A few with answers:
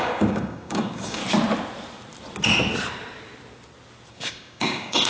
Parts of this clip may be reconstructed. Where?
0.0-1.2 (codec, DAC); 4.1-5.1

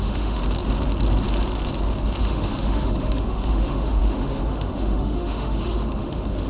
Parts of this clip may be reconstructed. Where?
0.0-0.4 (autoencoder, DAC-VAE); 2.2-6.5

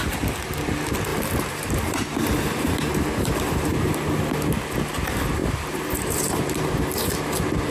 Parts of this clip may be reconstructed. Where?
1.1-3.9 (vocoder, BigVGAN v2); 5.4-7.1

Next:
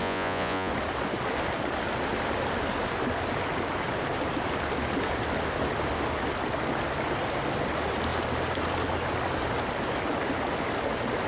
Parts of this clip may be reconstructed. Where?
0.0-0.7 (vocoder, Vocos)

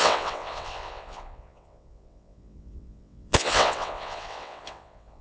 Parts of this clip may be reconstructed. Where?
0.0-5.2 (vocoder, WaveNeXt)

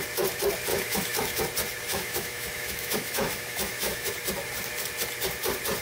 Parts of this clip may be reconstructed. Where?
0.7-1.4 (autoencoder, DAC-VAE); 1.9-4.1

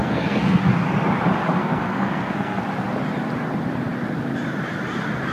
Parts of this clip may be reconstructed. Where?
0.0-0.6 (codec, SNAC); 1.6-2.6

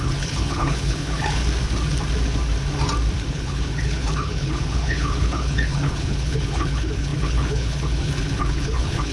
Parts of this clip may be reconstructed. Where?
0.0-1.4 (codec, HILCodec); 3.3-9.1